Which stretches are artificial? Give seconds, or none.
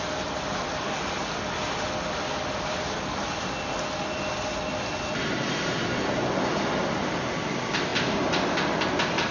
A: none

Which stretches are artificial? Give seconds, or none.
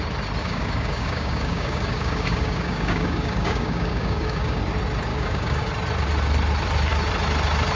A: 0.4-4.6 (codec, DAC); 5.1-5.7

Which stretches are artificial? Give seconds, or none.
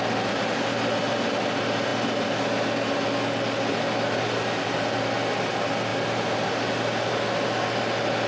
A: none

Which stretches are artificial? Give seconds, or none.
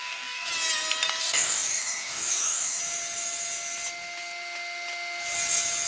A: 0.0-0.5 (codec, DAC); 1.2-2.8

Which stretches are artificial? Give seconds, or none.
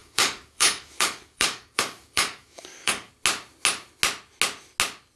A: 0.0-3.1 (codec, DAC)